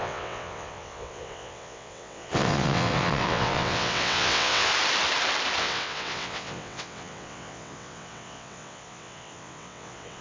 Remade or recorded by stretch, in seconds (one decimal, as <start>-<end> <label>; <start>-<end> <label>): 0.0-4.7 remade; 4.7-5.6 recorded; 5.6-10.2 remade